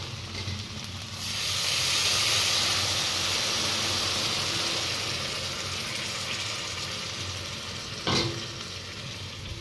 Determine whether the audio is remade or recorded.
recorded